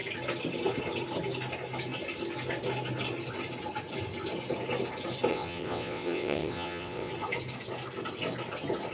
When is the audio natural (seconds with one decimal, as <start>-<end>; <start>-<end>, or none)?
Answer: 0.0-5.3; 7.1-8.9

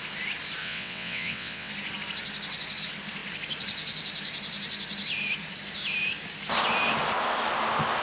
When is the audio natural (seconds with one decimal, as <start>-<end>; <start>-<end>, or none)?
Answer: 0.0-0.6; 1.7-8.0